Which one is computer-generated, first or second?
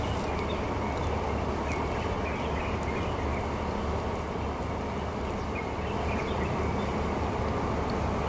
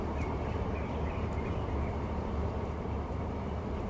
second